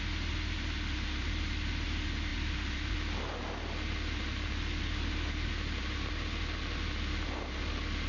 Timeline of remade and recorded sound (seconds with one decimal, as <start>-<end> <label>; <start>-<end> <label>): 0.0-8.1 recorded